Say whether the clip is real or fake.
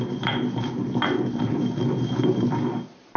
real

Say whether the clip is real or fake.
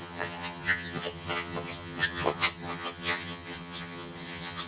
fake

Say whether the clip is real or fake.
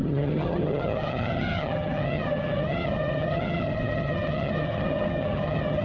fake